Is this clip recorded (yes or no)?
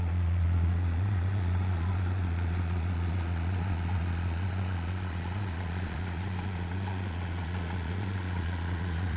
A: no